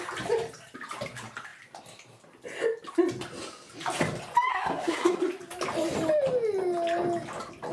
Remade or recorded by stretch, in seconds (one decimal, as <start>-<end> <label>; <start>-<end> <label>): 0.0-4.5 recorded; 4.5-5.2 remade; 5.2-7.7 recorded